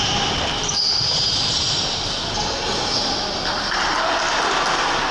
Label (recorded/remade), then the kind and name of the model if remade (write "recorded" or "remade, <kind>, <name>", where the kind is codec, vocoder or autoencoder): recorded